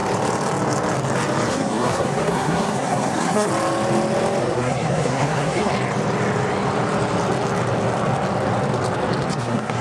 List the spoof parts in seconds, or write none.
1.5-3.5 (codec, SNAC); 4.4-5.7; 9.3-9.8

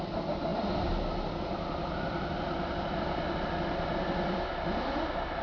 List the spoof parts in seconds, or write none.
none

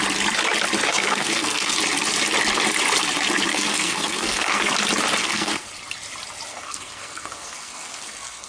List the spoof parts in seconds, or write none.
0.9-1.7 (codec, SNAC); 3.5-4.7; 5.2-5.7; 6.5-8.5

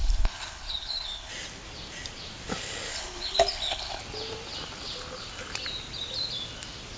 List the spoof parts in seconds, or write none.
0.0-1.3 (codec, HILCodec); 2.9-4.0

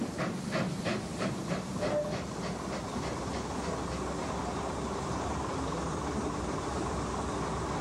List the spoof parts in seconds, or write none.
1.1-2.1 (vocoder, BigVGAN v2); 4.2-5.5; 5.9-7.1

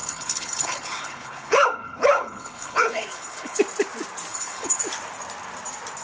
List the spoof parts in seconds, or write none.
0.0-3.6 (codec, HILCodec); 4.3-4.8